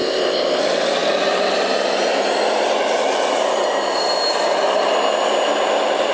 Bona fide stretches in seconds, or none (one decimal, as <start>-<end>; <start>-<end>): 0.6-6.1